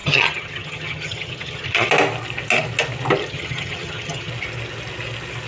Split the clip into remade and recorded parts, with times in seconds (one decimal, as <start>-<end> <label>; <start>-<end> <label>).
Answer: 0.0-1.9 remade; 1.9-3.2 recorded; 3.2-4.3 remade; 4.3-5.5 recorded